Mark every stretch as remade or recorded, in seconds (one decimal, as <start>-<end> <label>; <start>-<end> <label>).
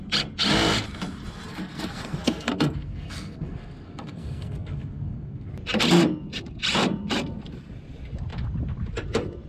0.0-1.5 recorded; 1.5-5.5 remade; 5.5-9.5 recorded